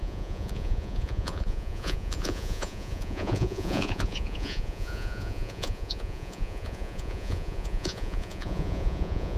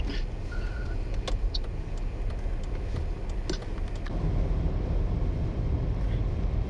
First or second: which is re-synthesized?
first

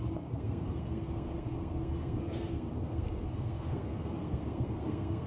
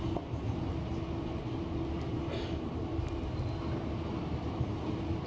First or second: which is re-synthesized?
first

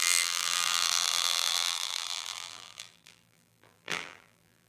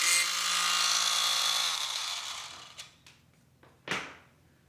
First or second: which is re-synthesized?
first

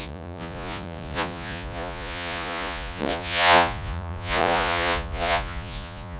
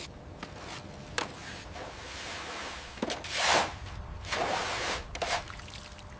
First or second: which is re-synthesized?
first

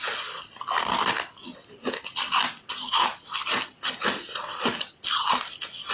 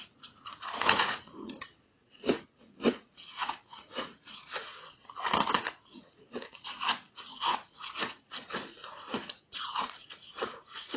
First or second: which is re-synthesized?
second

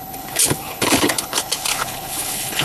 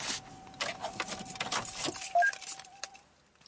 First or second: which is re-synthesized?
first